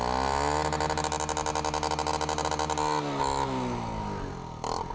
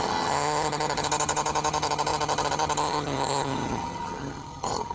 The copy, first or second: second